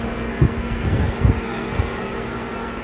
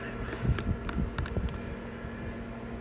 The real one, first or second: second